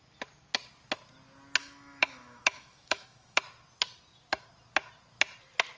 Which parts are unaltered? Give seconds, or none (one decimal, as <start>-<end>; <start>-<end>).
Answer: 0.0-1.6; 3.4-5.8